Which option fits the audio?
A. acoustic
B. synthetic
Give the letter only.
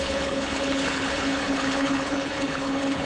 B